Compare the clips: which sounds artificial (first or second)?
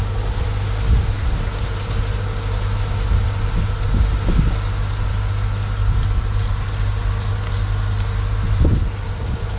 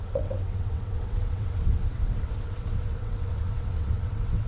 second